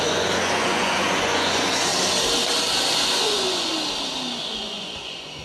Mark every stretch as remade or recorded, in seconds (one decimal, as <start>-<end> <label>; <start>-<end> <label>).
0.0-1.9 remade; 1.9-2.9 recorded; 2.9-3.7 remade; 3.7-4.4 recorded; 4.4-5.4 remade